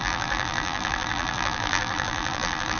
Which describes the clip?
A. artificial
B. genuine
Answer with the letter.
A